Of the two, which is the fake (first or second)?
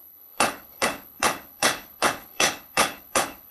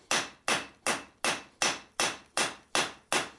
first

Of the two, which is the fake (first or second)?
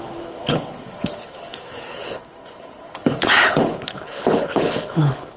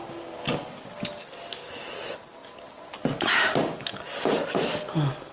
first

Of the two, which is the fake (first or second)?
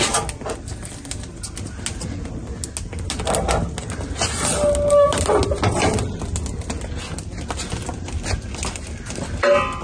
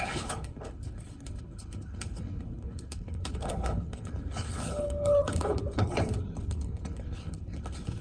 second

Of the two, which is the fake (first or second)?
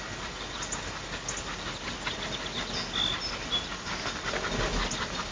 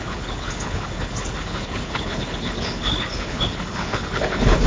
second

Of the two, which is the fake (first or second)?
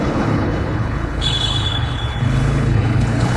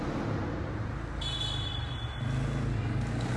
first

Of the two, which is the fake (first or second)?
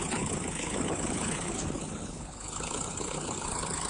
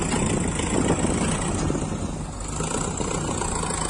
first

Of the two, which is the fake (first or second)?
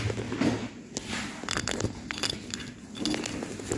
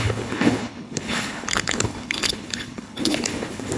second